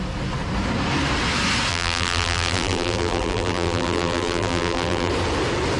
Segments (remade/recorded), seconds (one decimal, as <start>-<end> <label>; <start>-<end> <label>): 0.0-1.7 recorded; 1.7-5.1 remade; 5.1-5.8 recorded